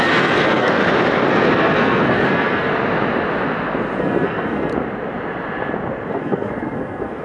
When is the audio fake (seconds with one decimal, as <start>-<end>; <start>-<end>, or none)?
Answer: 0.0-0.8; 1.3-2.7; 4.0-4.7; 6.1-7.2